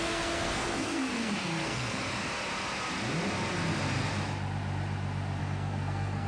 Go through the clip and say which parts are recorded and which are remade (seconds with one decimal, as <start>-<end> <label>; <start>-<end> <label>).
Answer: 0.0-2.0 remade; 2.0-5.4 recorded; 5.4-6.3 remade